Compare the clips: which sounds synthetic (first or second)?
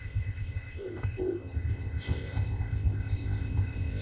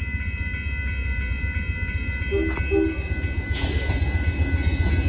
first